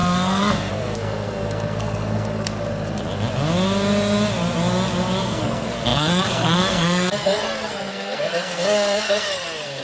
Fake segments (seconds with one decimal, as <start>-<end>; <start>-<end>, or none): 0.0-2.5; 5.2-9.8